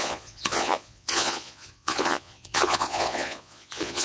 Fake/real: fake